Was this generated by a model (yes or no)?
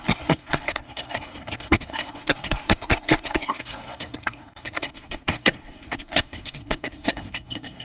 yes